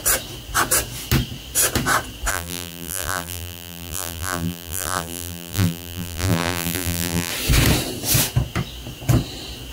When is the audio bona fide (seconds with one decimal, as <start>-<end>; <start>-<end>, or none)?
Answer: 0.0-2.3; 7.3-9.7